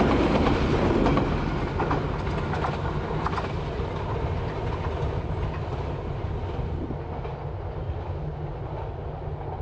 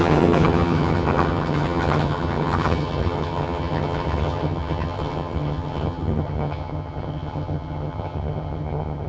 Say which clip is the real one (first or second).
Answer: first